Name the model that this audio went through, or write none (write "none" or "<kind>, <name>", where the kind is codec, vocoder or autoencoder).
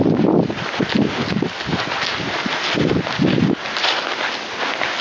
none